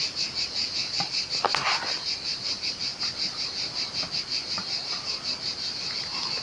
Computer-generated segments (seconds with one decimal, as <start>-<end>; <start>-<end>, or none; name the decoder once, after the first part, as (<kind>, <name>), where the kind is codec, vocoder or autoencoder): none

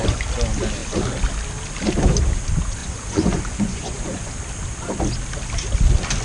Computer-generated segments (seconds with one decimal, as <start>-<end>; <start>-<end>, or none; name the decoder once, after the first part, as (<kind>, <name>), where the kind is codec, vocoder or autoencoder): 2.8-4.3 (vocoder, Vocos)

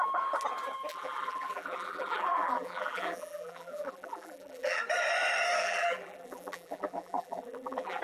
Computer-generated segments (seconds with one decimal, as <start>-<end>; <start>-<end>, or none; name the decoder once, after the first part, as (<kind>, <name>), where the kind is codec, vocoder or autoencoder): 0.9-4.8 (vocoder, BigVGAN v2); 5.6-8.0

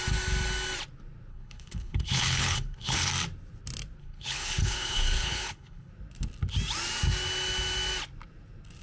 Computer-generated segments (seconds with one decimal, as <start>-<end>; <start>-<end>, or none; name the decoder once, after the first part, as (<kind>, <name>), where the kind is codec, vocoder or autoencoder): 1.3-3.1 (codec, HILCodec); 4.0-5.9

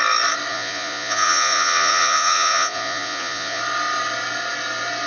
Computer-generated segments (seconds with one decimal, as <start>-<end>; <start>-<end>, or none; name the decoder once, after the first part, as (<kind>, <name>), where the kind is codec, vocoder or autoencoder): 0.5-3.6 (vocoder, Vocos)

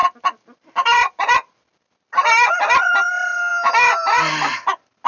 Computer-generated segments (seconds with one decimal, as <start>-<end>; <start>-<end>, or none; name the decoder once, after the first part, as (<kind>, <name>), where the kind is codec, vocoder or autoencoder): 0.0-3.1 (vocoder, BigVGAN v2); 3.5-4.2

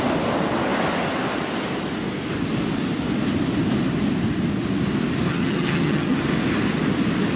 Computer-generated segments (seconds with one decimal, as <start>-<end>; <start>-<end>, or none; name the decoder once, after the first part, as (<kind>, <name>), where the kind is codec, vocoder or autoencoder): 5.3-6.2 (vocoder, HiFi-GAN)